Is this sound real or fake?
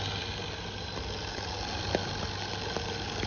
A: real